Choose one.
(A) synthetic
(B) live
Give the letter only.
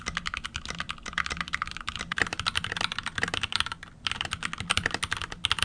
B